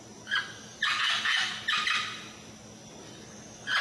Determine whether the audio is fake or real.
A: real